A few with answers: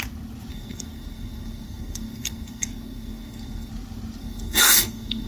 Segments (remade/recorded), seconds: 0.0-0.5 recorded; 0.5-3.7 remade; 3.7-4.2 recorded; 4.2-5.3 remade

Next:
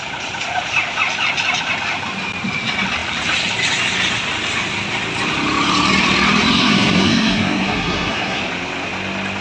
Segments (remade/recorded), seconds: 0.0-6.6 recorded; 6.6-8.4 remade; 8.4-9.4 recorded

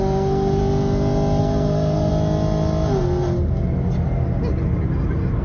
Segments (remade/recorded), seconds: 0.0-0.6 remade; 0.6-1.4 recorded; 1.4-2.1 remade; 2.1-5.4 recorded

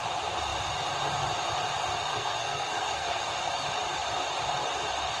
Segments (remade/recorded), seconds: 0.0-2.1 recorded; 2.1-3.3 remade; 3.3-5.2 recorded

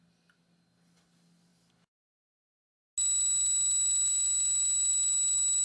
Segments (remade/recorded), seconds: 0.0-5.6 recorded

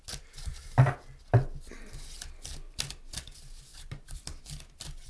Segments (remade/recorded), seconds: 0.0-5.1 recorded

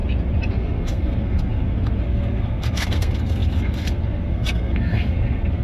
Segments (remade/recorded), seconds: 0.0-0.5 recorded; 0.5-5.6 remade

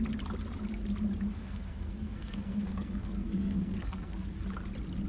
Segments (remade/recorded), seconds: 0.0-1.3 recorded; 1.3-4.4 remade; 4.4-5.1 recorded